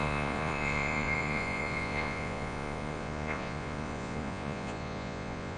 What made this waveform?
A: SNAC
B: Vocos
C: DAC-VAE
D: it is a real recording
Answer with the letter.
B